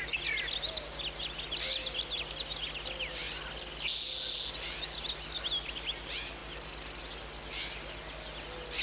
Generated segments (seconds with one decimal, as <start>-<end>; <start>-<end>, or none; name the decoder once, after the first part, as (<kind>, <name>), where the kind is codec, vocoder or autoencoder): none